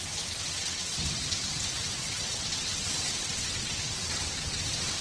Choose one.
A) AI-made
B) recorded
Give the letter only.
A